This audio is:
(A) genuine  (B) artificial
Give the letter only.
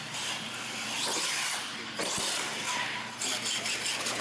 A